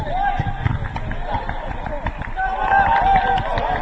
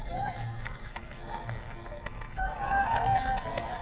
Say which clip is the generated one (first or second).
second